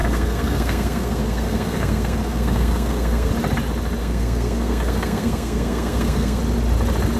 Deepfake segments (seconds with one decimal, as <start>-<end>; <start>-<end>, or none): 0.0-3.3; 4.0-6.4